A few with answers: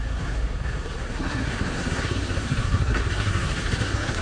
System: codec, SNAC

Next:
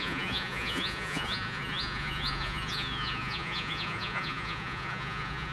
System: vocoder, Vocos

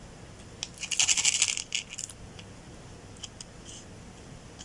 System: none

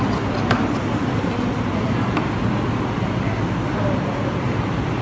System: none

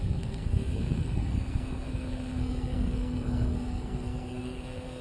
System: codec, SNAC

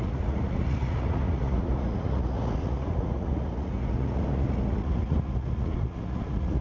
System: vocoder, Vocos